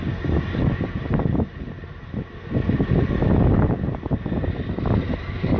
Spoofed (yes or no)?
no